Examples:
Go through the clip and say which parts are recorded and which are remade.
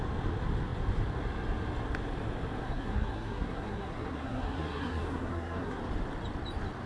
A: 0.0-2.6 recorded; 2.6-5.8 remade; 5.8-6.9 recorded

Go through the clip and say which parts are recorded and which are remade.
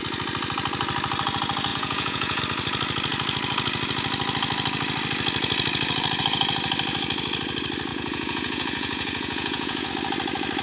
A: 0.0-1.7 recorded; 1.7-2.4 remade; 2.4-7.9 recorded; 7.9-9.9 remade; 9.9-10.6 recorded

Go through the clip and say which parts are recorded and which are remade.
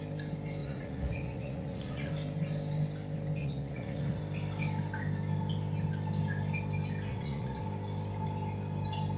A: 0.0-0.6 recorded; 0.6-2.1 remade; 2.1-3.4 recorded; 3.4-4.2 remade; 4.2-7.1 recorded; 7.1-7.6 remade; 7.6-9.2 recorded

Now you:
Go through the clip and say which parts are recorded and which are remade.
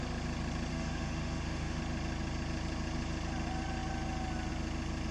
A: 0.0-0.7 recorded; 0.7-1.8 remade; 1.8-5.1 recorded